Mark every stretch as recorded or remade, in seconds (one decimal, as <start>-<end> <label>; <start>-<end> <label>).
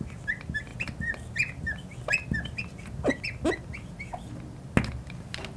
0.0-5.6 recorded